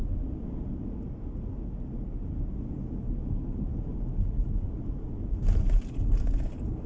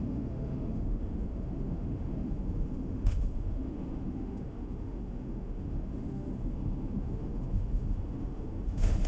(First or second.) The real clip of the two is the first